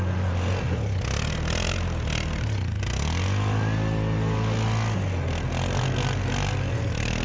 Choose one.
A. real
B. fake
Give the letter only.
A